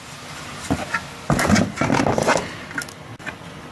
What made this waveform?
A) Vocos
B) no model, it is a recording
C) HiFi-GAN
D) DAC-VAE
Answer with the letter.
B